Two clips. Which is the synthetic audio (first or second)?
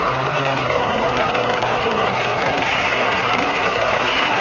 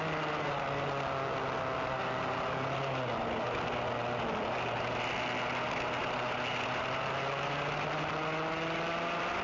first